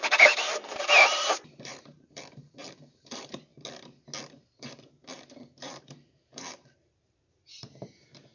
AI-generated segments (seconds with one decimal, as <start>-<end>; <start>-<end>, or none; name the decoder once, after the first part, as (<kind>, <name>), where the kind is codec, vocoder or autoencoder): 0.0-3.5 (vocoder, BigVGAN v2); 4.2-8.3